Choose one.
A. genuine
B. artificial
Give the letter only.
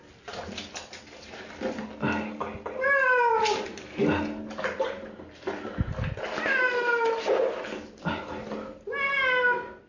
A